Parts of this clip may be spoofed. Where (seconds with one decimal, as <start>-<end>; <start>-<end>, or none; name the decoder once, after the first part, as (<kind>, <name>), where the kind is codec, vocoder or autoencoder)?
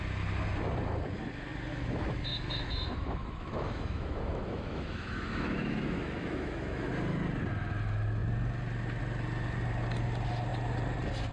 1.7-6.9 (autoencoder, DAC-VAE)